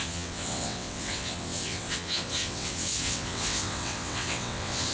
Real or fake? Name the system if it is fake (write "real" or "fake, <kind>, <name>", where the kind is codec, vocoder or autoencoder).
fake, vocoder, WaveNeXt